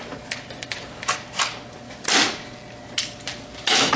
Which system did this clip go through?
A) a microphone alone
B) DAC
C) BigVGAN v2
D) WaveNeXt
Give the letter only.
A